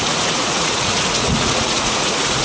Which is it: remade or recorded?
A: remade